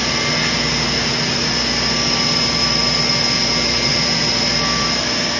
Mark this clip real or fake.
real